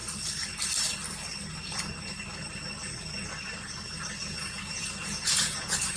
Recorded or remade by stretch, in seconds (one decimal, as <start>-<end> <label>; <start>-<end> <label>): 0.0-4.2 recorded; 4.2-6.0 remade